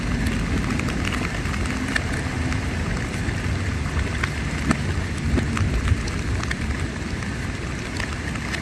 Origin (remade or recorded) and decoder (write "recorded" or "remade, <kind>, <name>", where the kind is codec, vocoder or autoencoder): recorded